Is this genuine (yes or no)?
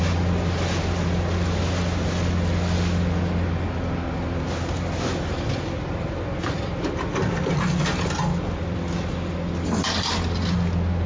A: yes